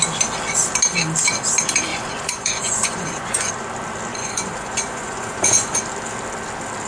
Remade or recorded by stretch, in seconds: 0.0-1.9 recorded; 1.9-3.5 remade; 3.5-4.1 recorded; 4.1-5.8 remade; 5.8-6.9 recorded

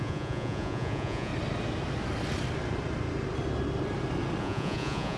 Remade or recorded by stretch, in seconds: 0.0-1.3 remade; 1.3-4.4 recorded; 4.4-5.2 remade